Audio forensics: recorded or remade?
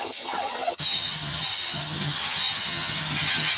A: remade